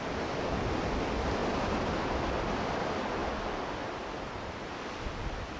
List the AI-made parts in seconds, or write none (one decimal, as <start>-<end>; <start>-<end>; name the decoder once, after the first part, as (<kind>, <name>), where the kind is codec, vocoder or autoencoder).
none